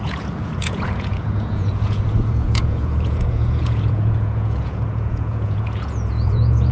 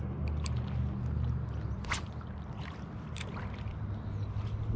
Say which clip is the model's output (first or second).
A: first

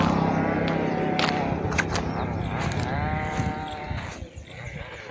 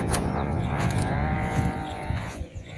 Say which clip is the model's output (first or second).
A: second